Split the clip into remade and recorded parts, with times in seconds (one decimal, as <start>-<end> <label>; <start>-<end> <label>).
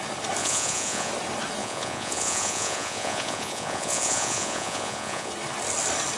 0.0-0.4 recorded; 0.4-1.1 remade; 1.1-1.6 recorded; 1.6-5.3 remade; 5.3-6.2 recorded